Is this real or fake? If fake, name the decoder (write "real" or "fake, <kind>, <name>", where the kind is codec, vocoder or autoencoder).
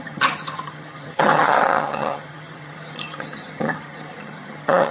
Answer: fake, vocoder, HiFi-GAN